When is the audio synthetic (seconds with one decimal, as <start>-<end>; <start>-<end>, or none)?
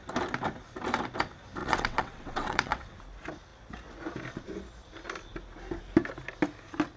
1.6-3.0